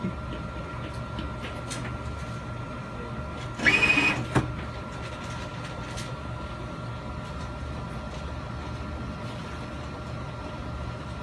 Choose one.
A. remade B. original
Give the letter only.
B